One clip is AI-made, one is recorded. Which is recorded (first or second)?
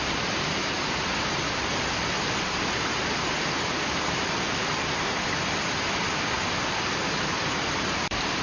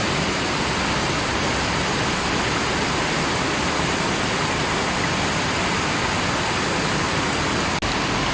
second